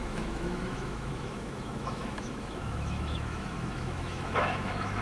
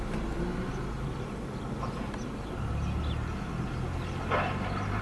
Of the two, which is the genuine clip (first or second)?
second